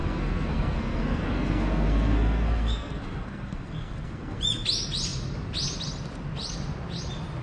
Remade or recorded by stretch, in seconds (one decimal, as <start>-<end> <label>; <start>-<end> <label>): 0.0-4.4 remade; 4.4-7.4 recorded